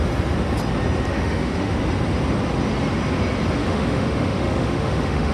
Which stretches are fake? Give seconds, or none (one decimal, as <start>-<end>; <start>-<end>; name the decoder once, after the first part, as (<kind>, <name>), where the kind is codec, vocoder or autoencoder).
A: 1.1-1.8 (autoencoder, DAC-VAE); 3.6-5.3